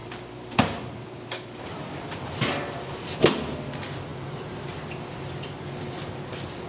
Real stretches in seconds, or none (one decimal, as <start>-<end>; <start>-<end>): 3.0-6.7